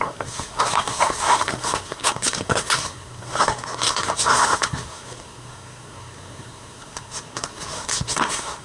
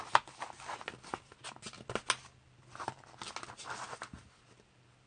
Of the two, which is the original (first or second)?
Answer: second